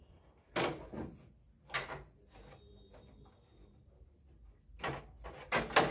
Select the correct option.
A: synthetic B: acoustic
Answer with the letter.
B